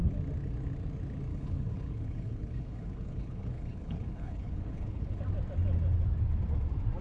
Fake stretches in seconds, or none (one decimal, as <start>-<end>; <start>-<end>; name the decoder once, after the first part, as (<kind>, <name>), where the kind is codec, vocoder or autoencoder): 1.3-5.2 (codec, HILCodec)